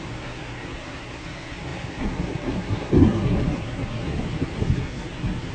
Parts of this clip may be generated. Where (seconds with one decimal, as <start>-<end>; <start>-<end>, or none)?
0.0-5.5